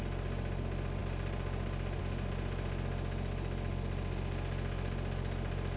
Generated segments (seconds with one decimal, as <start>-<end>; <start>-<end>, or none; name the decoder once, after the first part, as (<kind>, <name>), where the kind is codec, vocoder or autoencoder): none